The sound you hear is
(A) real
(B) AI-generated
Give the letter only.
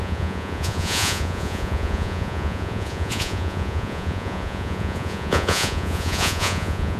B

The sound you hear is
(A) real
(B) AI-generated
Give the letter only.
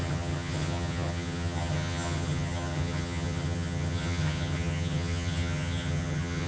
B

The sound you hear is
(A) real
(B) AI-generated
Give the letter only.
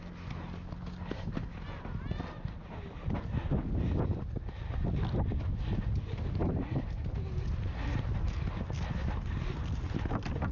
A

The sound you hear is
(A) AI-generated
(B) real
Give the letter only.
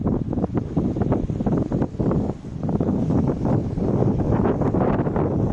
B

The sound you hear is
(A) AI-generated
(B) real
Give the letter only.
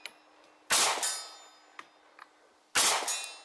B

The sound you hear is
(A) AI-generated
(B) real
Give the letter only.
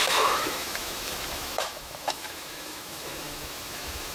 A